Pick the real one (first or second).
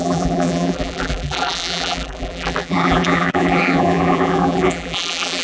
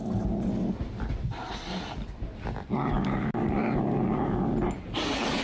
second